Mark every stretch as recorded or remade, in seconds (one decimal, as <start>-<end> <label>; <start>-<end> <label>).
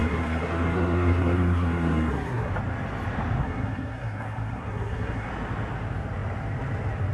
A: 0.0-2.5 remade; 2.5-3.4 recorded; 3.4-5.3 remade; 5.3-7.1 recorded